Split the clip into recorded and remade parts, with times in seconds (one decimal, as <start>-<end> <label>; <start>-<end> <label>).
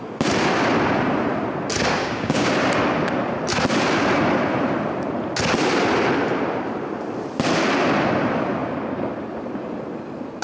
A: 0.0-2.0 recorded; 2.0-2.5 remade; 2.5-10.4 recorded